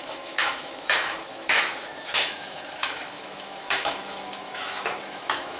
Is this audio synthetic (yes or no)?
yes